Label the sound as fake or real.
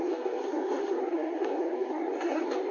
fake